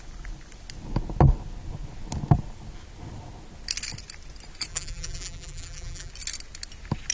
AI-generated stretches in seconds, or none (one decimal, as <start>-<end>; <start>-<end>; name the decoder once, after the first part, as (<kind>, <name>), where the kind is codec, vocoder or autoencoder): 4.7-6.1 (vocoder, BigVGAN v2)